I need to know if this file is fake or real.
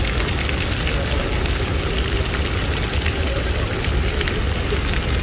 real